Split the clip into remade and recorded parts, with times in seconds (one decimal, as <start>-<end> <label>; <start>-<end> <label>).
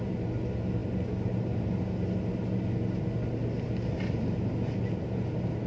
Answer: 0.0-5.7 recorded